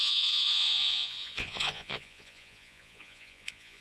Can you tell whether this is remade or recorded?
remade